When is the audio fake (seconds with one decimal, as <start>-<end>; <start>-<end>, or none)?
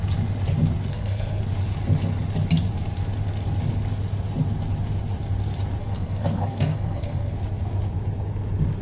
0.9-1.4; 5.8-7.3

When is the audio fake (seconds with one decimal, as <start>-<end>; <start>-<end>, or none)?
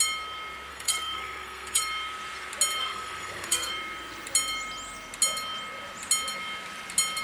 0.7-1.8; 2.8-3.7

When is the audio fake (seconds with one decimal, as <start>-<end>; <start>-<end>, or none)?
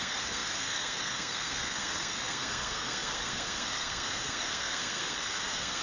0.0-5.8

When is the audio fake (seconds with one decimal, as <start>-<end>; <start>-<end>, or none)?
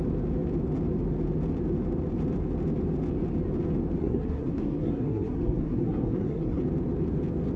4.0-6.6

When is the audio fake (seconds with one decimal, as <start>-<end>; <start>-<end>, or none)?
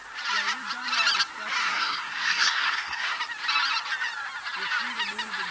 1.6-3.2